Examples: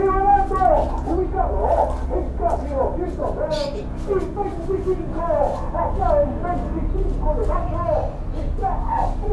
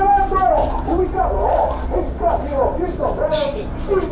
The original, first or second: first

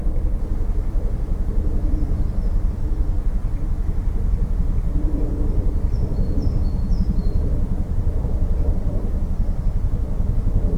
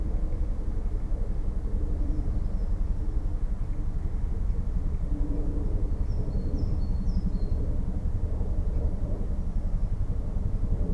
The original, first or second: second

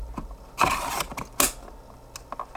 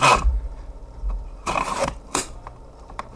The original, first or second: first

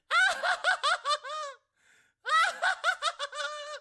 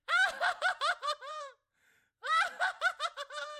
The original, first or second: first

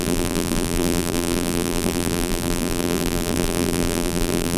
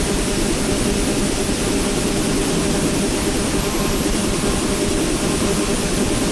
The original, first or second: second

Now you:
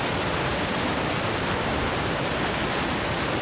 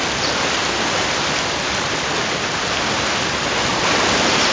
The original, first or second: second